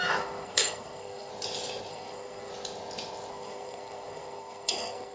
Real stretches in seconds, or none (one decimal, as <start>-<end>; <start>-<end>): 1.3-1.9; 2.5-3.3